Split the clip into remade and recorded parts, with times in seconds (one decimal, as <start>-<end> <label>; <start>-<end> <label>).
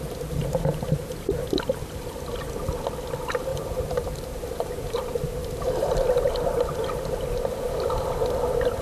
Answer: 0.0-0.4 recorded; 0.4-1.3 remade; 1.3-3.5 recorded; 3.5-5.0 remade; 5.0-8.8 recorded